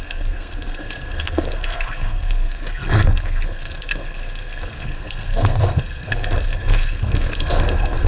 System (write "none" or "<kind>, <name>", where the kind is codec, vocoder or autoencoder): codec, SNAC